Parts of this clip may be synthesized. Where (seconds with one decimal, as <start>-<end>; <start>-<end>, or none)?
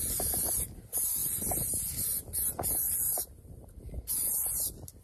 none